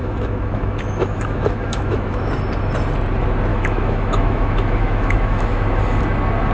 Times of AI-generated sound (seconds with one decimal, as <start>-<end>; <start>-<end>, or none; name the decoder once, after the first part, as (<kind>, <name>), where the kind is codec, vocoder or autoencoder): 0.0-2.3 (autoencoder, DAC-VAE); 3.5-5.8